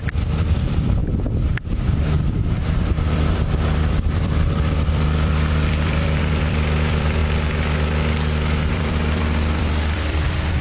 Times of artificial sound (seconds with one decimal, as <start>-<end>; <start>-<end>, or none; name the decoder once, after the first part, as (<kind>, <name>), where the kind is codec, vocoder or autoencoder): 0.0-7.2 (vocoder, BigVGAN v2); 8.7-10.6